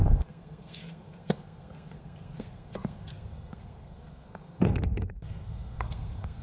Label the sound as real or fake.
fake